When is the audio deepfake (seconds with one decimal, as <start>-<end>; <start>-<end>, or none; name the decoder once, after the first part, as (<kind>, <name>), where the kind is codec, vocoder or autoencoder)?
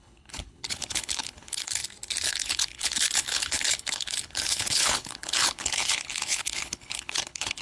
0.0-1.8 (codec, HILCodec); 2.3-7.6